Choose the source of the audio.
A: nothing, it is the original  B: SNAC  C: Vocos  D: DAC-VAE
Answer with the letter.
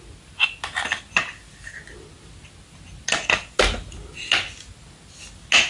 A